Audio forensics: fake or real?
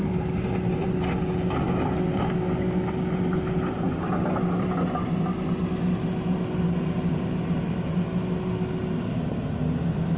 real